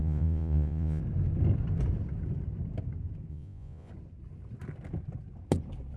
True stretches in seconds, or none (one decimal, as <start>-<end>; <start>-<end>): 1.0-3.3; 3.9-6.0